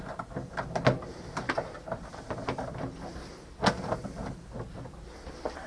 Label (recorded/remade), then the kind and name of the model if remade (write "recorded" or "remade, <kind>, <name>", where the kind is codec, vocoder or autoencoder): recorded